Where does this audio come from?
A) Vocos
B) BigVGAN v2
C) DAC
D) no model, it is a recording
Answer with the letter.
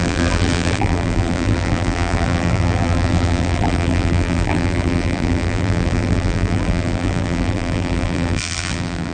B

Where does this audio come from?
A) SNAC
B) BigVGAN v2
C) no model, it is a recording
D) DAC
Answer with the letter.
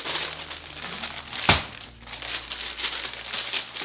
C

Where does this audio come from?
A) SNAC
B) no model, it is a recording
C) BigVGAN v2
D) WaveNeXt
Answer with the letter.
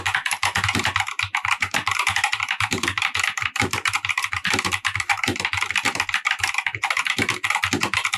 C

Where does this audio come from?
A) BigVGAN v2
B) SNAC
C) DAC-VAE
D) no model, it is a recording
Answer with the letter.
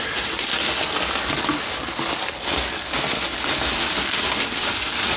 D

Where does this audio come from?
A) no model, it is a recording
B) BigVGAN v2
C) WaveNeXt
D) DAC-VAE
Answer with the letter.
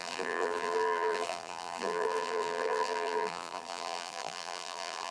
B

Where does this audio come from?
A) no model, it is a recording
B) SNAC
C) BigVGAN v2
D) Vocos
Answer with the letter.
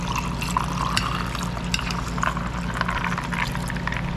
A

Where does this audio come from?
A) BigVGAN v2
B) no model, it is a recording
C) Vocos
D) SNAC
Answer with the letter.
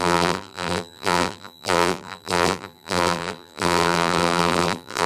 A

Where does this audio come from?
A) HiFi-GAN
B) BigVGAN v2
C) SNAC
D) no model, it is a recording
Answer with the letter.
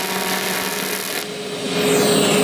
D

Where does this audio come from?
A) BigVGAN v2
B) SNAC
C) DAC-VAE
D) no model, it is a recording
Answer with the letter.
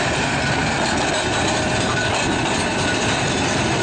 D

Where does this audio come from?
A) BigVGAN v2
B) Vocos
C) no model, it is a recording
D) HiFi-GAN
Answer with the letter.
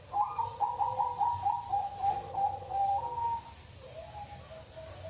C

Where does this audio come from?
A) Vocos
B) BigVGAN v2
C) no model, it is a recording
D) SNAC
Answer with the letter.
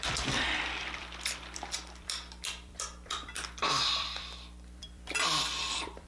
B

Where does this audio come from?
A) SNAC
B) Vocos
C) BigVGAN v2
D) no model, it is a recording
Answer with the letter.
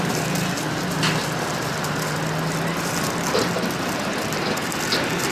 D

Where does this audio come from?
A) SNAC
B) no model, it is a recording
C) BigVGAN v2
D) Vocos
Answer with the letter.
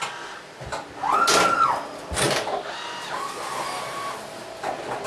B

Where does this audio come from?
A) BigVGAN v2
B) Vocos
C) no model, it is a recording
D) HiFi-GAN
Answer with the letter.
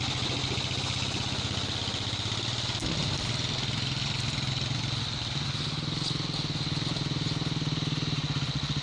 C